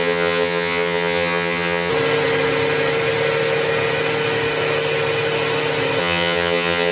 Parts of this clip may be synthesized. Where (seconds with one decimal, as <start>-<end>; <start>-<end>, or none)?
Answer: 0.0-1.9; 6.0-6.9